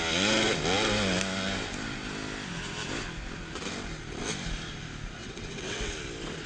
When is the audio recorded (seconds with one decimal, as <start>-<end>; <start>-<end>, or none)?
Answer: 0.0-5.2; 5.9-6.5